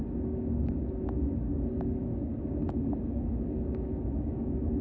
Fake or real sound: fake